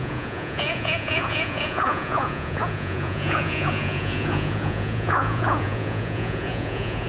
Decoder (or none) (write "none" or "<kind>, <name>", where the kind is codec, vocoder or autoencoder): vocoder, Vocos